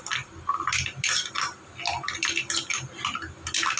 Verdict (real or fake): real